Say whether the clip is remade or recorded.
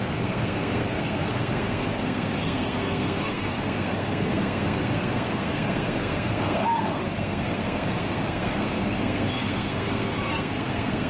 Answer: remade